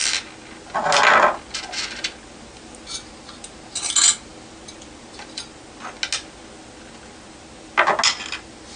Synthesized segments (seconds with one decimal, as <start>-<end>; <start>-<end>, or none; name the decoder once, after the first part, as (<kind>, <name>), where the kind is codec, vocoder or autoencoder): none